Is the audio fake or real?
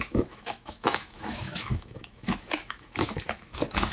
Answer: fake